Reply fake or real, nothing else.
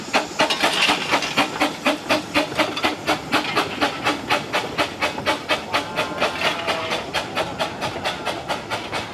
real